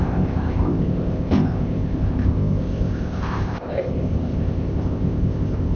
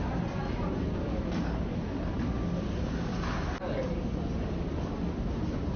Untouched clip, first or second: second